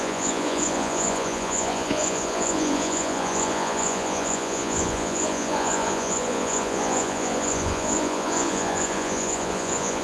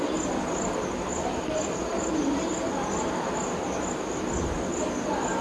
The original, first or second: second